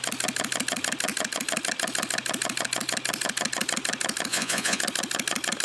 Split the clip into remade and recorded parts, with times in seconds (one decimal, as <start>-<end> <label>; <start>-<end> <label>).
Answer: 0.0-4.3 recorded; 4.3-4.8 remade; 4.8-5.6 recorded